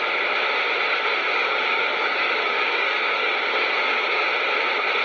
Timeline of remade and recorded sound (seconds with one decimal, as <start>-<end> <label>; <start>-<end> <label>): 0.0-1.3 recorded; 1.3-4.3 remade; 4.3-5.0 recorded